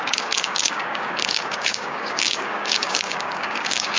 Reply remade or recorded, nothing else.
remade